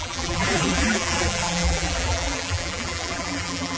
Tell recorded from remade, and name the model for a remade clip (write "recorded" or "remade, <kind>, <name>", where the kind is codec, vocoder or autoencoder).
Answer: remade, vocoder, BigVGAN v2